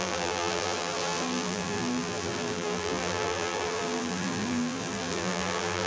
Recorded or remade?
remade